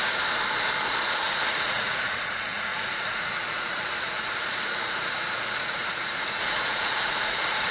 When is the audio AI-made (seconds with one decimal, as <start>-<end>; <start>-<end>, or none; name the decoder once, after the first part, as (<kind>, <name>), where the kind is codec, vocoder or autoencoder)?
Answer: 0.8-7.7 (vocoder, Vocos)